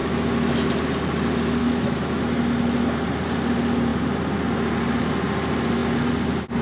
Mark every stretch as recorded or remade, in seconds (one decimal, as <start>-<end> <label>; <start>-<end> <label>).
0.0-0.7 remade; 0.7-1.6 recorded; 1.6-2.2 remade; 2.2-6.6 recorded